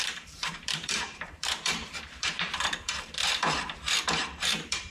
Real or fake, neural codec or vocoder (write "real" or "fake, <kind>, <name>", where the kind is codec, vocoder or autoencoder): fake, vocoder, BigVGAN v2